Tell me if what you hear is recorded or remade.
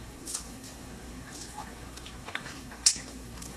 remade